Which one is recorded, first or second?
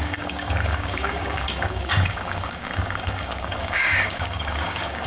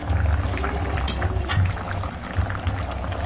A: second